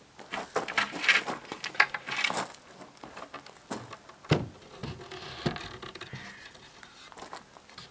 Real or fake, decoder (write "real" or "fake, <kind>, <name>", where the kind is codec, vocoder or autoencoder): real